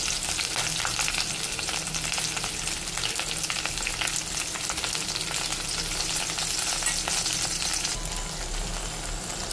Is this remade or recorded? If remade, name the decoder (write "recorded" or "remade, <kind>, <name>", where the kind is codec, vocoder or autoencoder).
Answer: recorded